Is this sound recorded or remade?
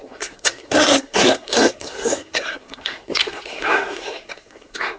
remade